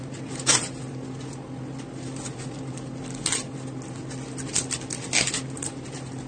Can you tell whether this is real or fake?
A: real